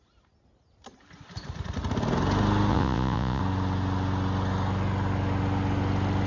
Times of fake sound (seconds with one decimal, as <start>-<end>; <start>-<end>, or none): 2.7-3.4